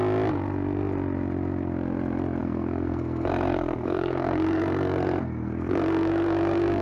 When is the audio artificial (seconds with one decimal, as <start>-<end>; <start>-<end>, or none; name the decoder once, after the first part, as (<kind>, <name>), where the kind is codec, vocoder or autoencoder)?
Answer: 2.4-6.8 (codec, SNAC)